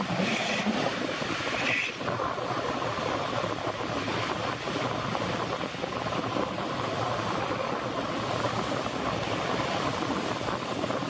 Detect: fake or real real